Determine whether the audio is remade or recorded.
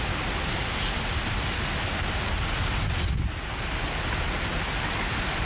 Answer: recorded